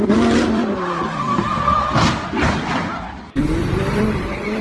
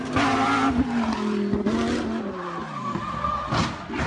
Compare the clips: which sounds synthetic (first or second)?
first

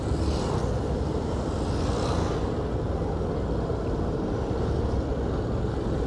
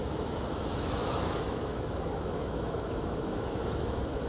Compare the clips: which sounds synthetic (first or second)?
second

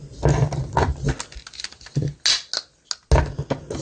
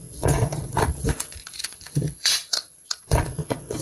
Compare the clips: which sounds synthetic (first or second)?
second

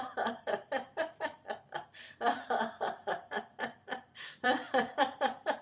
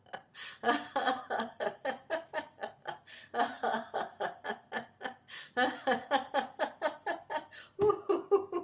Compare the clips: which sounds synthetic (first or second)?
first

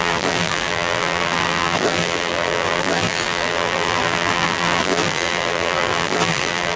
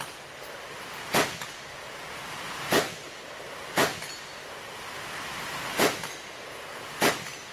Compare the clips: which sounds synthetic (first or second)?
first